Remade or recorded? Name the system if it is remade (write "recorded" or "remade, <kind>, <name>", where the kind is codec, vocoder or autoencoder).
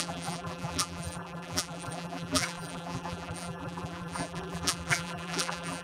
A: remade, vocoder, BigVGAN v2